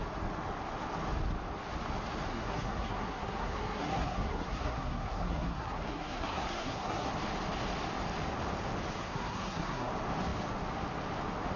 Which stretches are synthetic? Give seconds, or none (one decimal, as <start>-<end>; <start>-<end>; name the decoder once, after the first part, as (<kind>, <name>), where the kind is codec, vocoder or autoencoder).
2.3-7.1 (codec, SNAC); 9.0-9.9